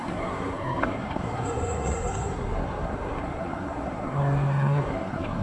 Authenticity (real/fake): fake